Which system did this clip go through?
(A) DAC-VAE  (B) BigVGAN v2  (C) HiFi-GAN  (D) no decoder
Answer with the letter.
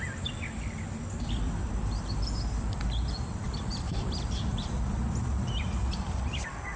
B